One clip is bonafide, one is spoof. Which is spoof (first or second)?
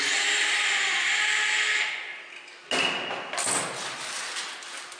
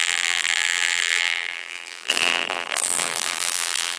second